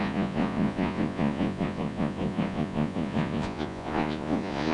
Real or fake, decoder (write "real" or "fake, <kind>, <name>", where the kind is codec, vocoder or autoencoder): fake, vocoder, Vocos